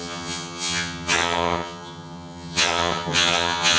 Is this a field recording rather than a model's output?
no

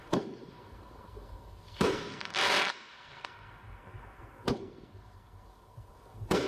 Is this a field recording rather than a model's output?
no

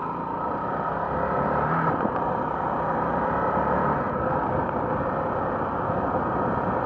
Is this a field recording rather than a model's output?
yes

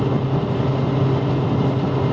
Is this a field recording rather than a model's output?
yes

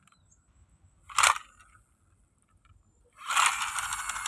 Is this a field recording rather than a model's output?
yes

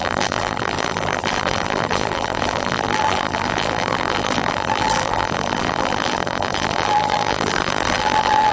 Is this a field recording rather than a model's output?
no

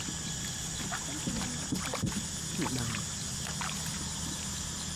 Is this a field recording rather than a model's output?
yes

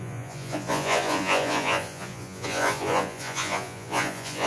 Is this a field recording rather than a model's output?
no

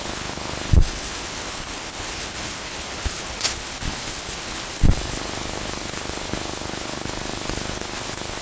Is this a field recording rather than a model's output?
no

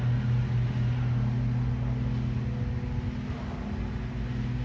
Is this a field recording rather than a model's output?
yes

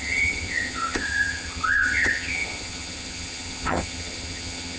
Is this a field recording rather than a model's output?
no